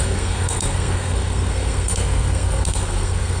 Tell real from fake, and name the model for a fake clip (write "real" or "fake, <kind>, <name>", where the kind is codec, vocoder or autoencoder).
fake, codec, SNAC